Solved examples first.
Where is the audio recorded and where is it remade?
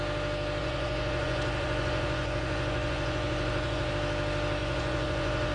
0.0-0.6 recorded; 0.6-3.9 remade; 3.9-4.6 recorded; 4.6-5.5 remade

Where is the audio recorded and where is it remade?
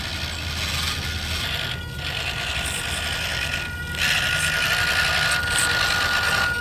0.0-6.6 recorded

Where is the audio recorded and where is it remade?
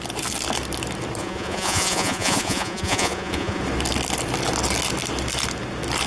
0.0-1.2 recorded; 1.2-3.6 remade; 3.6-6.1 recorded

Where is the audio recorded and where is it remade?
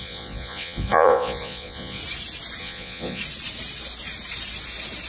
0.0-2.0 remade; 2.0-2.6 recorded; 2.6-3.2 remade; 3.2-5.1 recorded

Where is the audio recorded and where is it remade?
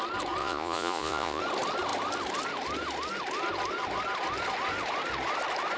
0.0-0.4 recorded; 0.4-1.4 remade; 1.4-5.8 recorded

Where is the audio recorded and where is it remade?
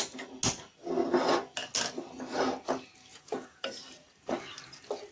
0.0-3.1 recorded; 3.1-3.8 remade; 3.8-5.1 recorded